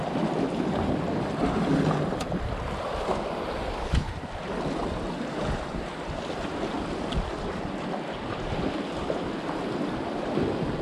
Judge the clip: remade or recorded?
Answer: recorded